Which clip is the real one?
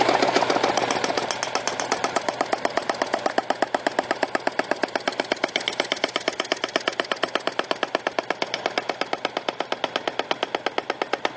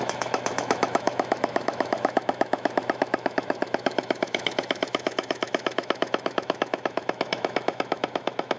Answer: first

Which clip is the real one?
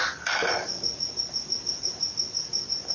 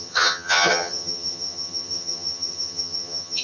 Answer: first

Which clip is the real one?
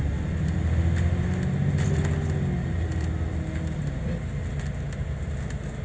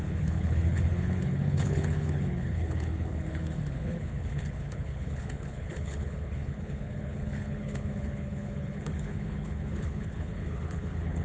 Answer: first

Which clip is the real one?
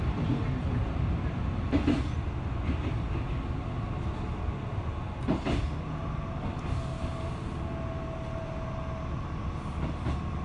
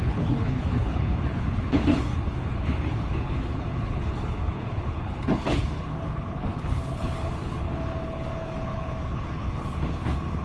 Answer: first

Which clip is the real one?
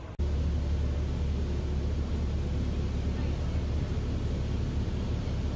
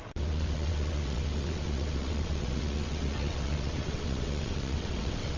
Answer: first